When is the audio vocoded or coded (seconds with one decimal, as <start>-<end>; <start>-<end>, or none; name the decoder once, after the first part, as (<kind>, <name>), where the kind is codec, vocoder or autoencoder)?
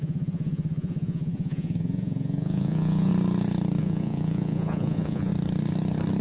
0.0-3.1 (vocoder, Vocos); 3.8-5.3